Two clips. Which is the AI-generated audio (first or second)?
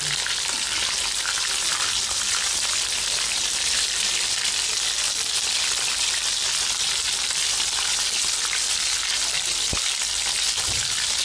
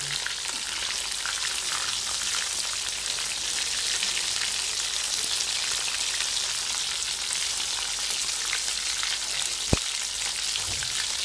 first